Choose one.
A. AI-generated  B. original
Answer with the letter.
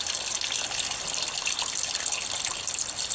B